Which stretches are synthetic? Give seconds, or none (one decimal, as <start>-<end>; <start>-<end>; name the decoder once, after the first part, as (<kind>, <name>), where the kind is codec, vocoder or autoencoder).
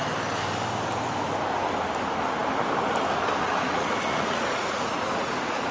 3.4-5.7 (vocoder, Vocos)